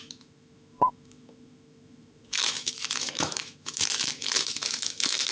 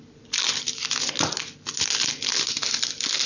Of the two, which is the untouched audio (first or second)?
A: second